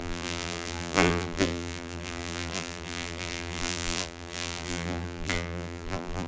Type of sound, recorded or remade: remade